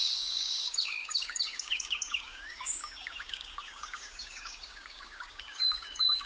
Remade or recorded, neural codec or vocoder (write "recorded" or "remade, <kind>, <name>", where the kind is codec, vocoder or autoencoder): remade, codec, DAC